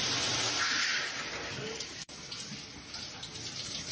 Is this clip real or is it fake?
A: fake